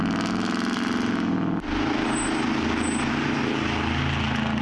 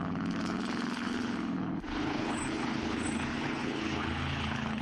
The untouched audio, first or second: first